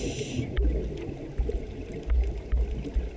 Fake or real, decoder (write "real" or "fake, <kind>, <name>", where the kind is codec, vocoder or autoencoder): real